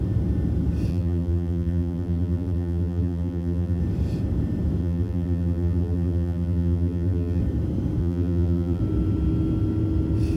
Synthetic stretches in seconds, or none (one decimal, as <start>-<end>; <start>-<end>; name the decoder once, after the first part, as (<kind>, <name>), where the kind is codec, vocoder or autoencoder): 0.9-3.8 (vocoder, BigVGAN v2); 4.8-7.4; 8.0-8.8